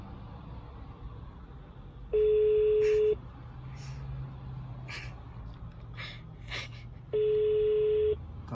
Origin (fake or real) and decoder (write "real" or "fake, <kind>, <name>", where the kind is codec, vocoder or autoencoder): real